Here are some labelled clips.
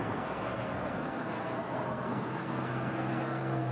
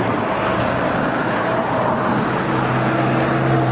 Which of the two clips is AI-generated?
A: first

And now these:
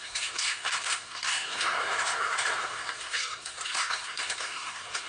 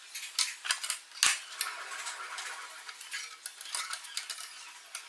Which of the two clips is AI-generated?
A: first